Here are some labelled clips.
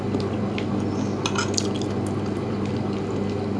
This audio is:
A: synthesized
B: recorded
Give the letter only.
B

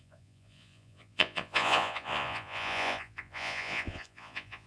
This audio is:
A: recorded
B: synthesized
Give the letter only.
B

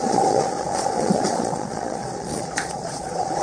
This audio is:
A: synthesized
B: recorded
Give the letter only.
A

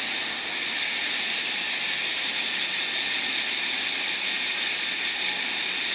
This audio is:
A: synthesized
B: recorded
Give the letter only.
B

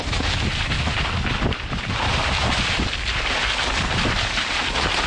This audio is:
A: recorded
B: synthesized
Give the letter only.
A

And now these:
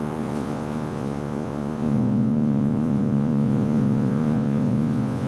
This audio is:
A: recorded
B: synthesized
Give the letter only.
B